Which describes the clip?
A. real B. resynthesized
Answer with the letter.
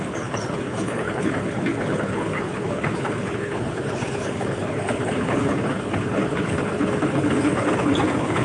B